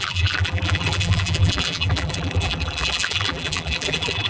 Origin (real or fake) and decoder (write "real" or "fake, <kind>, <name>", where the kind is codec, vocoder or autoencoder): fake, vocoder, BigVGAN v2